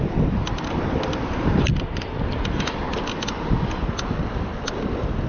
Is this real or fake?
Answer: real